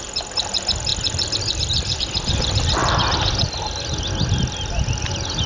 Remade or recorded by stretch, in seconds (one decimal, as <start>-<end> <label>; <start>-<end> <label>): 0.0-5.5 recorded